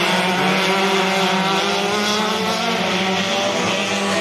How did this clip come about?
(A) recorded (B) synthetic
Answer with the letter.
A